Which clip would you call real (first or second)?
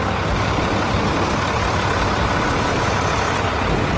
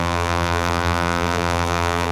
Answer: first